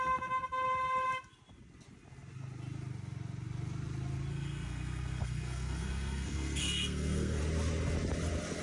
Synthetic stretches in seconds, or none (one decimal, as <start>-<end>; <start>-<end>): 4.3-7.4